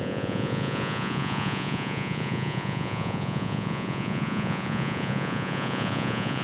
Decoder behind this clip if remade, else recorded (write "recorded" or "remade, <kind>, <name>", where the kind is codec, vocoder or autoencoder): remade, vocoder, Vocos